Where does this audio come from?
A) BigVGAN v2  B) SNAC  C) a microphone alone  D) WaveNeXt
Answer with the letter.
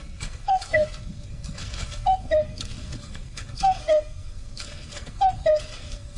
B